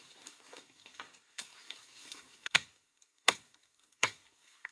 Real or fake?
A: fake